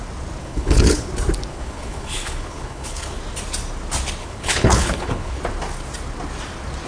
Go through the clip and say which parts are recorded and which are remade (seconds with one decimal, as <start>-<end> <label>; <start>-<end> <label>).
0.0-0.4 recorded; 0.4-1.1 remade; 1.1-1.5 recorded; 1.5-3.2 remade; 3.2-4.2 recorded; 4.2-5.4 remade; 5.4-6.9 recorded